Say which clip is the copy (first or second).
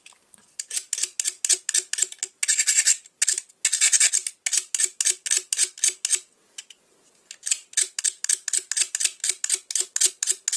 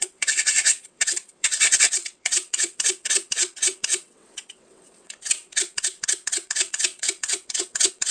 second